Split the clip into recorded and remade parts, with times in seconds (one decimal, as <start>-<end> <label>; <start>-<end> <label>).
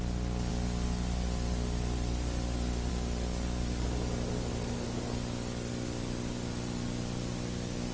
0.0-7.9 recorded